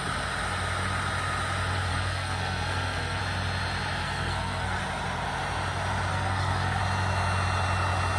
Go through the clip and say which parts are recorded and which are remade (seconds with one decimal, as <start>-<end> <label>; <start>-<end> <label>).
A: 0.0-1.9 recorded; 1.9-3.2 remade; 3.2-4.0 recorded; 4.0-4.8 remade; 4.8-6.1 recorded; 6.1-6.8 remade; 6.8-8.2 recorded

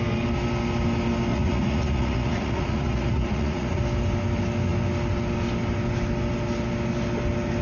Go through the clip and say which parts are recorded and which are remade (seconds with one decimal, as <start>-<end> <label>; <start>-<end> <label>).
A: 0.0-1.3 recorded; 1.3-3.8 remade; 3.8-7.6 recorded